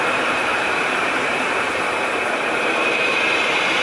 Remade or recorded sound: remade